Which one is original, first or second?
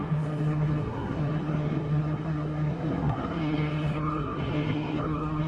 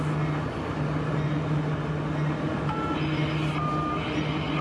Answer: second